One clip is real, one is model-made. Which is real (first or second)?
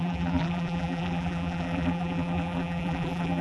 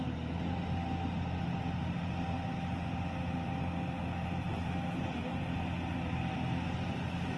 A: second